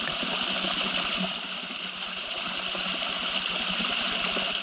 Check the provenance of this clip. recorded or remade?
recorded